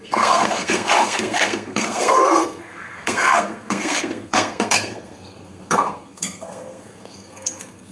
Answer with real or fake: fake